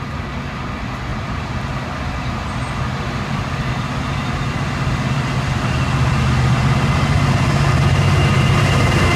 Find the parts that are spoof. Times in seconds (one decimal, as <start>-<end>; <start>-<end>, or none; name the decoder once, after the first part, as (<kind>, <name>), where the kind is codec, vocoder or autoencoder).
none

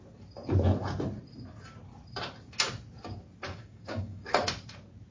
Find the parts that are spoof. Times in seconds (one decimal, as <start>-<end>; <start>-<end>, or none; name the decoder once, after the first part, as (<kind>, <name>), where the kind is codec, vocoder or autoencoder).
3.5-4.4 (codec, DAC)